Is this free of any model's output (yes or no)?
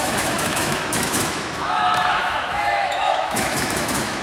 no